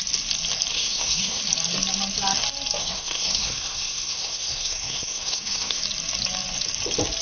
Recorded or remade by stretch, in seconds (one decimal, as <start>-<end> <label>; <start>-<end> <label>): 0.0-0.7 recorded; 0.7-1.4 remade; 1.4-2.8 recorded; 2.8-5.8 remade; 5.8-7.2 recorded